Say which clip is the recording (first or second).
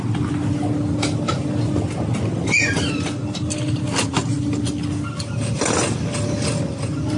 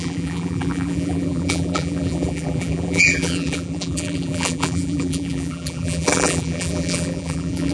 first